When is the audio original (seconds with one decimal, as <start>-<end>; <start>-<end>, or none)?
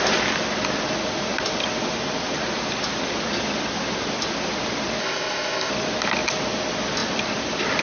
0.0-5.0; 5.7-7.8